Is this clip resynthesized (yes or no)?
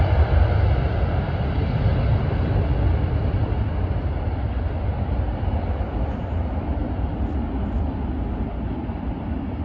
no